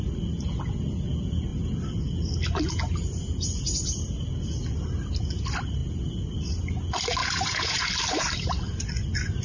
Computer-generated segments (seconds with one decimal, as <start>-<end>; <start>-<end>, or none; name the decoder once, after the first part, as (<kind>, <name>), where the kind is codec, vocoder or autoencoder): 7.2-7.9 (vocoder, Vocos)